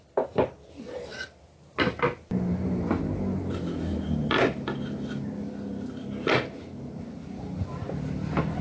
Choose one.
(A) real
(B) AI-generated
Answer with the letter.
A